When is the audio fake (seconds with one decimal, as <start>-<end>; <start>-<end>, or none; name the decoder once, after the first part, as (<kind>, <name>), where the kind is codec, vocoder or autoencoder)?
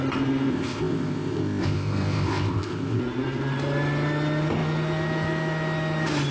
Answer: 0.5-3.0 (codec, ZipCodec)